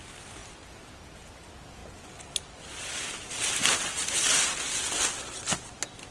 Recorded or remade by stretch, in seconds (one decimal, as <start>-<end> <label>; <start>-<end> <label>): 0.0-6.1 recorded

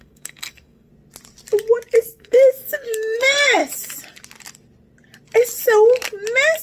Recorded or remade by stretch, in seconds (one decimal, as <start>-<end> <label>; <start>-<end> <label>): 0.0-0.9 remade; 0.9-2.0 recorded; 2.0-3.6 remade; 3.6-6.6 recorded

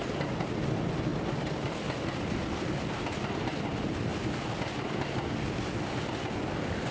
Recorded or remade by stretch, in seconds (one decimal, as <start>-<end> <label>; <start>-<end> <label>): 0.0-6.9 recorded